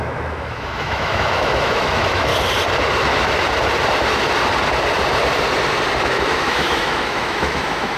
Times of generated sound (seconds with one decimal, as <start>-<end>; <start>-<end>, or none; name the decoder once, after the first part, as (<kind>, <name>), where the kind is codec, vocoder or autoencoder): 0.0-2.3 (autoencoder, DAC-VAE); 6.0-8.0